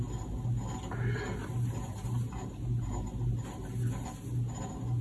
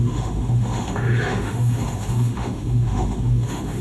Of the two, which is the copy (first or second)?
second